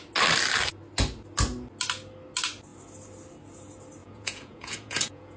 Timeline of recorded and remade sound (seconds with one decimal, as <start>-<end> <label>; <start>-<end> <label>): 0.0-4.0 recorded; 4.0-5.4 remade